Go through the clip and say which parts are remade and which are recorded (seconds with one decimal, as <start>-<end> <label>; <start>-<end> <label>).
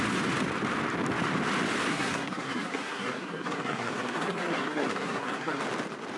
0.0-1.9 recorded; 1.9-5.6 remade; 5.6-6.2 recorded